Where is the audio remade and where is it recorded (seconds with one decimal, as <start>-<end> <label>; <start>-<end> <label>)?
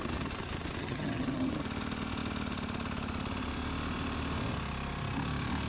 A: 0.0-0.8 recorded; 0.8-1.5 remade; 1.5-5.7 recorded